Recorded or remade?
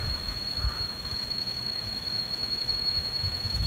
remade